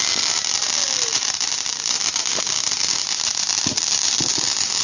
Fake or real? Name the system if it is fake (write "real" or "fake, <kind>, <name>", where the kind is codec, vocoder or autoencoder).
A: real